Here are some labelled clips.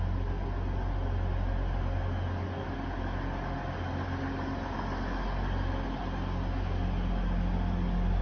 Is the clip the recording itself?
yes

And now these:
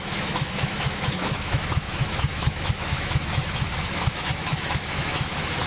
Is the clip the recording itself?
no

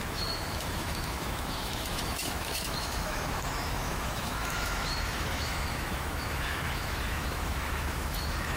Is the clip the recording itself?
no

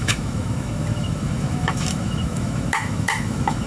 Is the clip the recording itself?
no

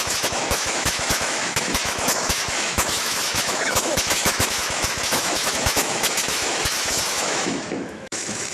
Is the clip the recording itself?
no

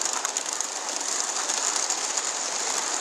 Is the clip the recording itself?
yes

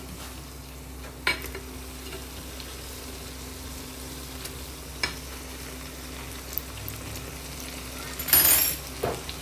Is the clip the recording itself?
yes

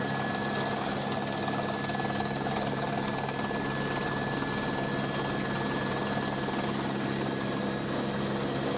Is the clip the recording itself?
yes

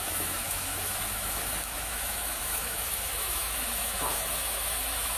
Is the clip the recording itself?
no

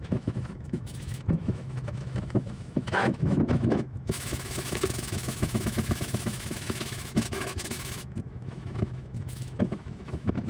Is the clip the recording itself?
no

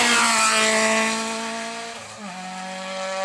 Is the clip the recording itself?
yes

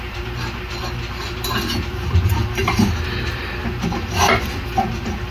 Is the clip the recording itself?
yes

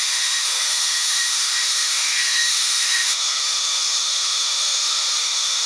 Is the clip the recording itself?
no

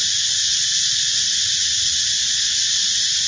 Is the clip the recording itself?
yes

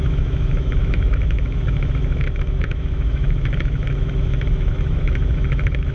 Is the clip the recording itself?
no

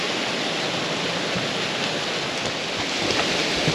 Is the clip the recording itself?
yes